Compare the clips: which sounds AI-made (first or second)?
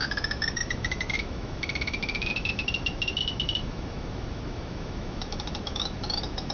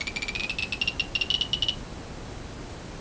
first